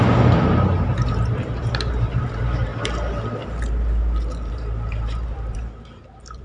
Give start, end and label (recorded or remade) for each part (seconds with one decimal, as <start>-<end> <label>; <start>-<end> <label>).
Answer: 0.0-2.7 remade; 2.7-4.5 recorded; 4.5-6.4 remade